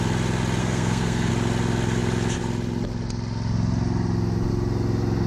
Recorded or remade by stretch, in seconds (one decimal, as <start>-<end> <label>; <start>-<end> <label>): 0.0-0.6 recorded; 0.6-1.3 remade; 1.3-5.3 recorded